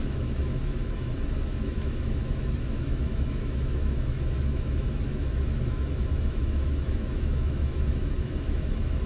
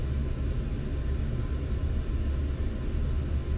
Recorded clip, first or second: second